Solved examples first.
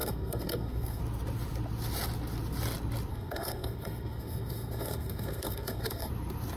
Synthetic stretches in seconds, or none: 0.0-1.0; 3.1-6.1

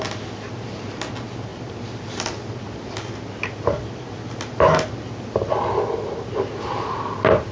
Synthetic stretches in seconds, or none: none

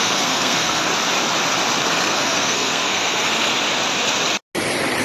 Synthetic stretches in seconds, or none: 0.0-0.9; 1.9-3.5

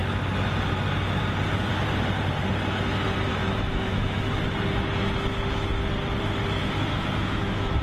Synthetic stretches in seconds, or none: 3.3-4.3; 6.6-7.8

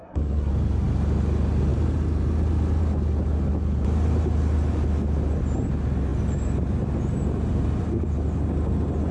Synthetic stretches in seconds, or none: 0.0-0.5

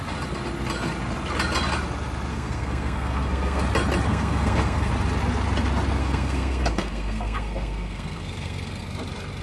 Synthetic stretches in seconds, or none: 2.3-3.6; 4.1-4.9; 6.0-8.8